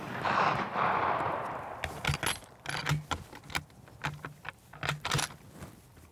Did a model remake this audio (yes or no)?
no